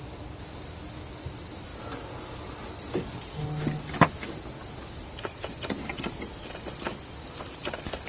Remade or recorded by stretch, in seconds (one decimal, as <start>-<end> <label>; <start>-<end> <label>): 0.0-8.1 recorded